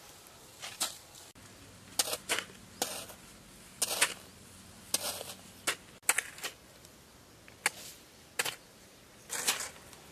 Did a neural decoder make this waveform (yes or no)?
no